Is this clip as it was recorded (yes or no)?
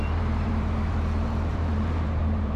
no